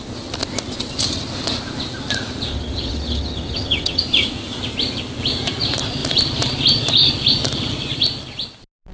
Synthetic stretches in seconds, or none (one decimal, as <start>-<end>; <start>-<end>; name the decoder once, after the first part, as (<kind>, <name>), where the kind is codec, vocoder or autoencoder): 2.5-4.0 (vocoder, HiFi-GAN)